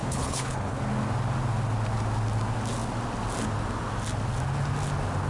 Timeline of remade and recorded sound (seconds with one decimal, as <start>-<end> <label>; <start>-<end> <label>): 0.0-0.8 remade; 0.8-5.3 recorded